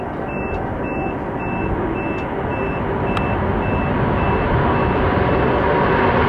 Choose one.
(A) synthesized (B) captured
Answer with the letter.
B